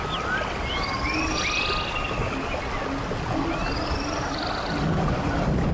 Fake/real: real